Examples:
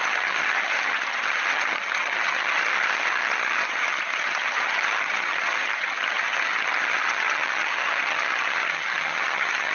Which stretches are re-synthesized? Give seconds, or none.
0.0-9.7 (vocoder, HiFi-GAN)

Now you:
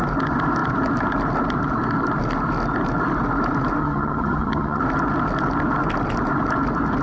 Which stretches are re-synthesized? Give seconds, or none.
3.8-4.8 (vocoder, HiFi-GAN)

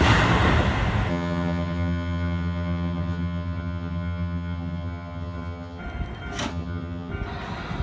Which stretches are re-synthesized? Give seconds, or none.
1.1-5.8 (vocoder, HiFi-GAN); 6.5-7.1

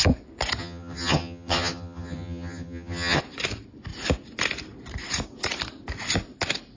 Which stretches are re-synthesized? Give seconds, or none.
0.6-3.2 (vocoder, HiFi-GAN)

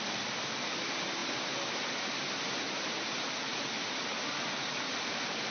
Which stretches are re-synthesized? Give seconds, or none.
none

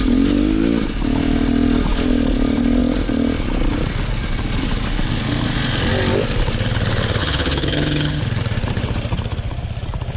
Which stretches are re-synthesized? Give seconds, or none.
7.2-8.2 (vocoder, HiFi-GAN)

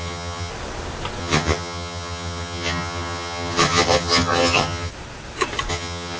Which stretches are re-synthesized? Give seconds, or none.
0.0-0.5 (vocoder, HiFi-GAN); 1.2-4.9; 5.7-6.2